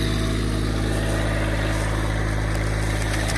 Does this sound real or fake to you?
real